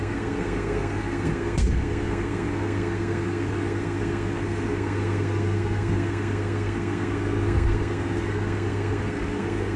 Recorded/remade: remade